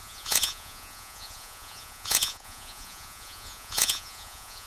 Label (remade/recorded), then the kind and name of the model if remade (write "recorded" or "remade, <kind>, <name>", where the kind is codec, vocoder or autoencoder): remade, vocoder, Vocos